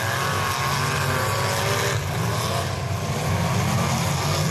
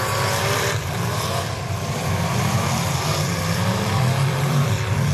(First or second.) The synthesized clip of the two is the second